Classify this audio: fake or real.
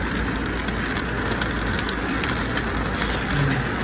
real